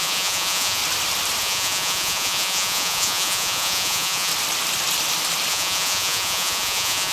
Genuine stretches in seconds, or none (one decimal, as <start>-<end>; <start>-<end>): 0.8-1.4; 4.3-5.5